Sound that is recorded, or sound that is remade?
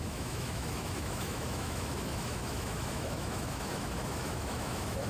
remade